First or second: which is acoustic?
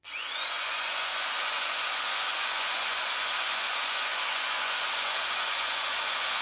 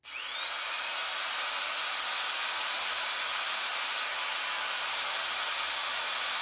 second